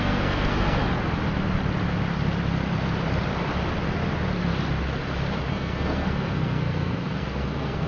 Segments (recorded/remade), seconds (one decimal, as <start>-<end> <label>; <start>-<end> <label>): 0.0-0.8 remade; 0.8-5.5 recorded; 5.5-7.9 remade

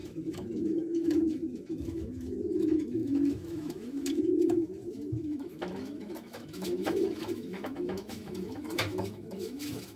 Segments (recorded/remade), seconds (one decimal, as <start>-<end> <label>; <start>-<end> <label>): 0.0-10.0 remade

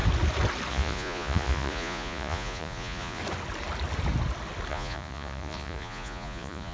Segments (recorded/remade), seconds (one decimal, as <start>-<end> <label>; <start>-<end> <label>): 0.0-0.7 recorded; 0.7-3.2 remade; 3.2-4.7 recorded; 4.7-6.7 remade

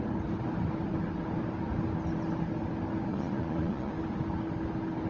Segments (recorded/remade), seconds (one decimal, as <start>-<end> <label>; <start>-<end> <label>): 0.0-3.1 recorded; 3.1-3.9 remade; 3.9-5.1 recorded

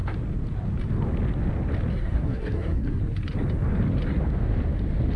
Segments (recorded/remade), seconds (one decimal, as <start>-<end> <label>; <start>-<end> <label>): 0.0-1.9 recorded; 1.9-3.0 remade; 3.0-5.2 recorded